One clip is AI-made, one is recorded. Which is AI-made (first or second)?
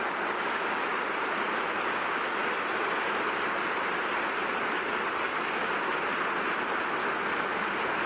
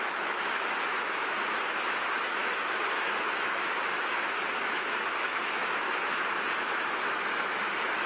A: second